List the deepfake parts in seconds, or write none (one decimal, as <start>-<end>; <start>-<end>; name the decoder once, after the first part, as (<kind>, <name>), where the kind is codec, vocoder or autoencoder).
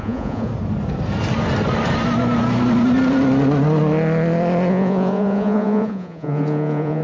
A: 0.0-0.5 (vocoder, Vocos); 4.7-7.0